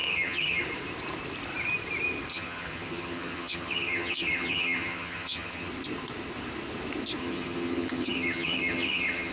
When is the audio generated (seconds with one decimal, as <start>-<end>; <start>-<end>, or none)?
0.0-0.6; 2.3-5.7; 7.2-9.3